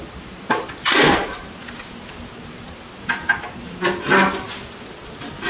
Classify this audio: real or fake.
real